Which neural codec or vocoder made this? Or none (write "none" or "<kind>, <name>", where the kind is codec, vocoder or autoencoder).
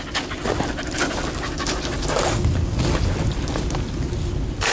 none